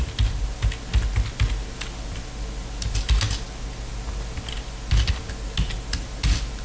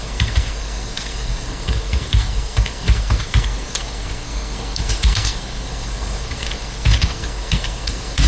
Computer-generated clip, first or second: second